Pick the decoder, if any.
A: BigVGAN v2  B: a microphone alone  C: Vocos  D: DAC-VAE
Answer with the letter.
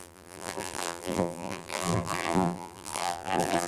A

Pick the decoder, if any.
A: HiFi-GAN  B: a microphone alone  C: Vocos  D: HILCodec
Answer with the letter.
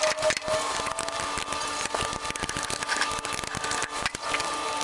B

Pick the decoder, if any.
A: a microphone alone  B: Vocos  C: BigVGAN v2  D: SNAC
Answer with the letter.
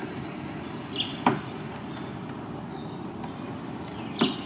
A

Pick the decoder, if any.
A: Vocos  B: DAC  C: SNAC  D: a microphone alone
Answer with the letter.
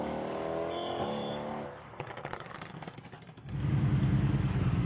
B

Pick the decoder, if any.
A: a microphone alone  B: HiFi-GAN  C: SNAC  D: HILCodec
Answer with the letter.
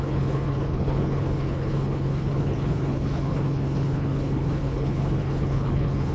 D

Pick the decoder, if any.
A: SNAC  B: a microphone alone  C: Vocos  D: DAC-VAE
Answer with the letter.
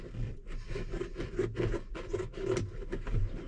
B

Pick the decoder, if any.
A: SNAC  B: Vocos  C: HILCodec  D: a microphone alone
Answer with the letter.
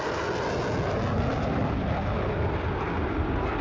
D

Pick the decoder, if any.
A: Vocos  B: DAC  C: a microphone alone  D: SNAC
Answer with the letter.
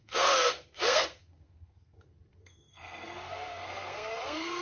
D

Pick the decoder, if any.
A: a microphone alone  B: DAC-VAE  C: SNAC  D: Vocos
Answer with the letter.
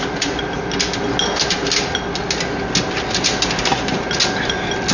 A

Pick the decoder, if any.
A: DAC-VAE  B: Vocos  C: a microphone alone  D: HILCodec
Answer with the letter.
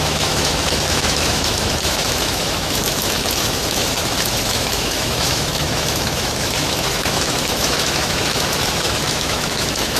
A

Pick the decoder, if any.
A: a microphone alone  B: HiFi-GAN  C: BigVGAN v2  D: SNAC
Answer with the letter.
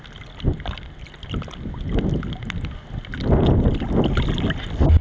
A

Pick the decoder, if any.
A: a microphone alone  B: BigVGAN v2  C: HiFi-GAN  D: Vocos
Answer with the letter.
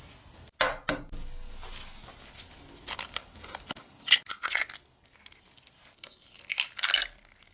A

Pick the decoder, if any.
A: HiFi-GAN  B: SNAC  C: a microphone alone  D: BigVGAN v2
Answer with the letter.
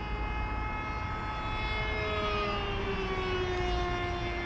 C